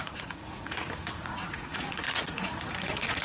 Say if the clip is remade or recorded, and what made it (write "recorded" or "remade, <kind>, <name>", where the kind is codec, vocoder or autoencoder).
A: remade, vocoder, Vocos